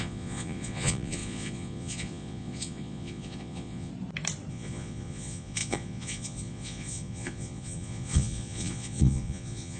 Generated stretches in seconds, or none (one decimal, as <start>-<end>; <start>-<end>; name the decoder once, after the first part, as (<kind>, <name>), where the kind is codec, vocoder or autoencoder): 0.0-3.9 (vocoder, Vocos); 4.5-9.8